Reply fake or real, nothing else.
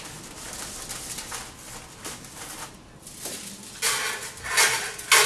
real